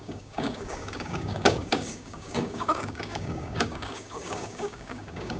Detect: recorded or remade remade